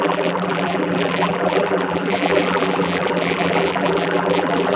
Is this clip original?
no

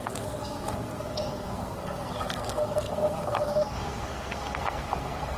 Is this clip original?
no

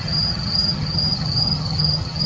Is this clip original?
no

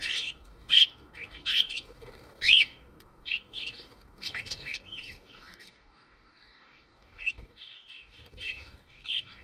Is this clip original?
no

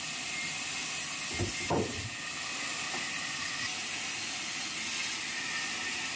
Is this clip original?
yes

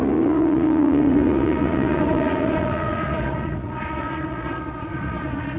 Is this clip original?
no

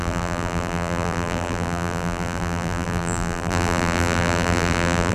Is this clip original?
no